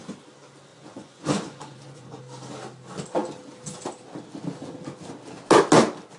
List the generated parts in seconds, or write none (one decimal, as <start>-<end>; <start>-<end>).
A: 0.7-2.2